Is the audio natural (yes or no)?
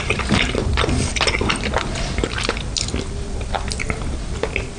yes